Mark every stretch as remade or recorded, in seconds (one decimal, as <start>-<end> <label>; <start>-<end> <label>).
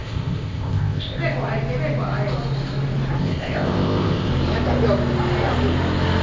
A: 0.0-1.2 remade; 1.2-3.2 recorded; 3.2-4.3 remade; 4.3-6.2 recorded